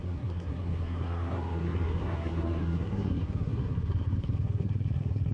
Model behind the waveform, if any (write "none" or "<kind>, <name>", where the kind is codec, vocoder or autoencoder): codec, SNAC